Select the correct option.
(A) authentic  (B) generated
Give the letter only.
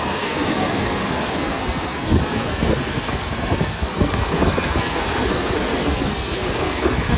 B